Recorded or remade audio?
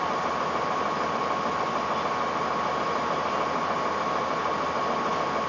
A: recorded